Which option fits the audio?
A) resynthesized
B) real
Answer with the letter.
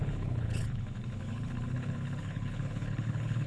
A